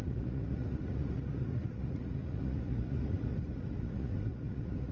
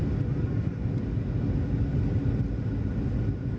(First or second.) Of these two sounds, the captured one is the second